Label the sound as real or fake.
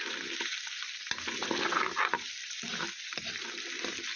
real